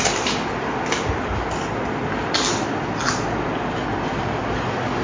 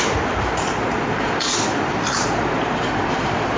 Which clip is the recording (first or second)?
first